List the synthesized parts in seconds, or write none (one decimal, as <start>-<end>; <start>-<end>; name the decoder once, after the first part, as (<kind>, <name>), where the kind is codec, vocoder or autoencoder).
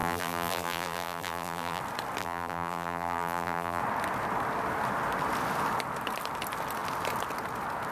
0.0-1.8 (vocoder, BigVGAN v2); 2.2-3.8